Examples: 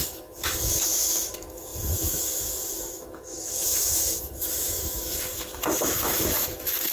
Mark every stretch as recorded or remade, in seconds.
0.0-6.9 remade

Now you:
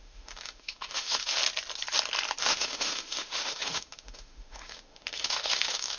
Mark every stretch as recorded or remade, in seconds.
0.0-1.4 remade; 1.4-2.4 recorded; 2.4-6.0 remade

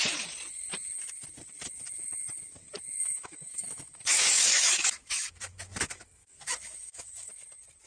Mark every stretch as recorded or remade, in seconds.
0.0-3.0 recorded; 3.0-7.3 remade; 7.3-7.9 recorded

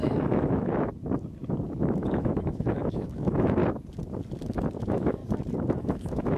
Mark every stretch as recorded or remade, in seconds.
0.0-0.9 remade; 0.9-1.8 recorded; 1.8-3.6 remade; 3.6-4.8 recorded; 4.8-5.2 remade; 5.2-5.8 recorded; 5.8-6.4 remade

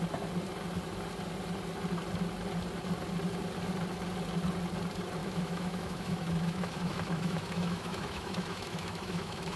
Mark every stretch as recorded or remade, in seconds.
0.0-5.2 recorded; 5.2-9.6 remade